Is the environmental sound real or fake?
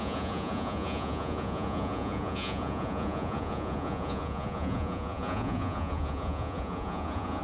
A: fake